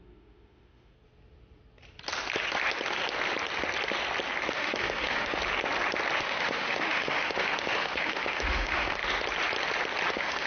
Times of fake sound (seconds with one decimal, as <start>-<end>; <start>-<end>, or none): 0.0-0.9; 4.5-5.4; 6.2-9.0; 10.1-10.5